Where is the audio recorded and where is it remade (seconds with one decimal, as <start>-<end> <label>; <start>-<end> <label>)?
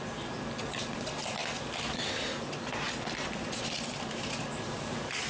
0.0-5.3 recorded